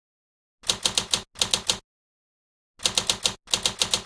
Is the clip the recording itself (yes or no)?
yes